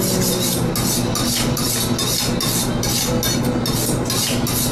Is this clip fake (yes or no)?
no